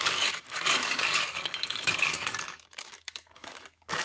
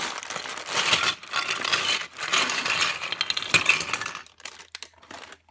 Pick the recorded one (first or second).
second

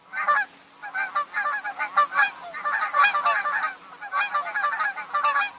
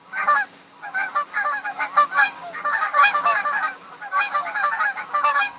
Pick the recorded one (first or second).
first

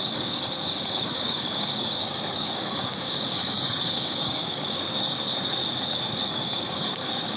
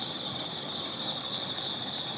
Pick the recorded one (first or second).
second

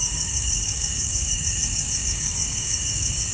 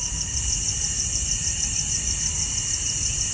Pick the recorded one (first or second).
second